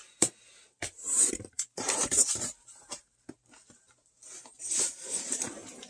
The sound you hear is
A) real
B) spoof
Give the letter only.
B